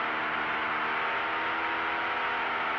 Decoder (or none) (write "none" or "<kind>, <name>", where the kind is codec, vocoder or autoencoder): none